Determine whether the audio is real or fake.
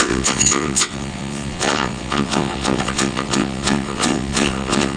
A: fake